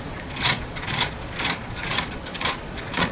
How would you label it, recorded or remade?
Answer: remade